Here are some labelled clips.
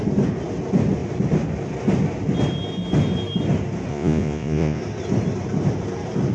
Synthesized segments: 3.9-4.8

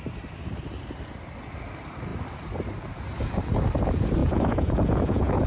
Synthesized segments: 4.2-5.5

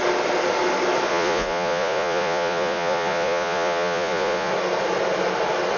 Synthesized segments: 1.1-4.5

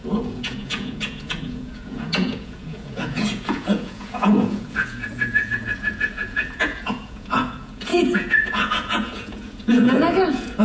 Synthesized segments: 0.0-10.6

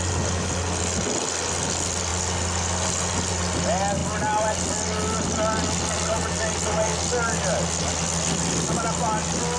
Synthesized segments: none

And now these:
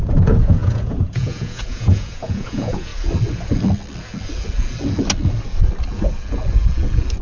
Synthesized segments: 0.0-2.9

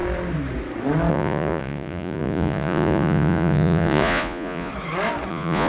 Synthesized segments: 1.1-4.7; 5.3-5.7

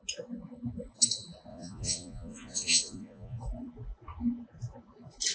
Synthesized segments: 1.5-3.4